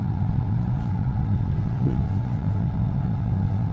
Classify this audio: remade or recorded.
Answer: remade